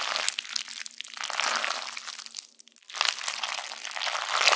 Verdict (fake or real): real